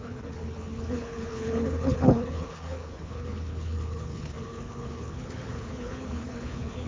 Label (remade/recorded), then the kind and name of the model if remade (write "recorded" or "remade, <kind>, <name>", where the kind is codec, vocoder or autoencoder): remade, codec, HILCodec